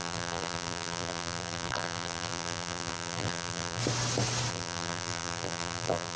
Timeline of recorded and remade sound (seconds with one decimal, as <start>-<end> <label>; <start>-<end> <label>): 0.0-3.8 remade; 3.8-4.5 recorded; 4.5-6.2 remade